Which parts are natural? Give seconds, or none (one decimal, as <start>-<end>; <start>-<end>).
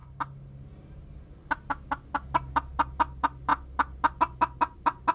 0.0-5.1